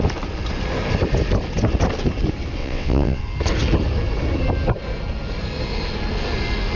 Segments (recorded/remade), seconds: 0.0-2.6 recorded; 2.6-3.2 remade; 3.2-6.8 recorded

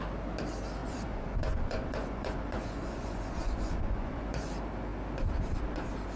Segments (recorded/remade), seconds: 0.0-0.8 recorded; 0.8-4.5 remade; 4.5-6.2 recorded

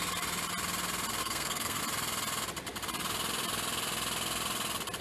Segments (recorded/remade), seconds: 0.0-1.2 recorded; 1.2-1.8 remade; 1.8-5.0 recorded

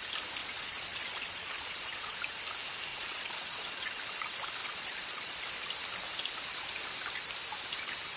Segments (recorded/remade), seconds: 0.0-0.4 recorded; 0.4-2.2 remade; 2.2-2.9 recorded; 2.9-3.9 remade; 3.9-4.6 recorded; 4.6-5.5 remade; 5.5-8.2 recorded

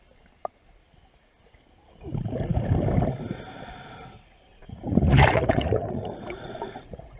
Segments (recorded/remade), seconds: 0.0-4.6 recorded; 4.6-7.2 remade